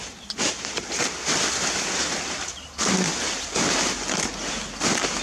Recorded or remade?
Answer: recorded